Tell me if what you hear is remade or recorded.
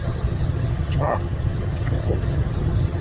remade